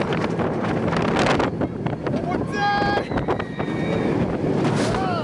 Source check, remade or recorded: recorded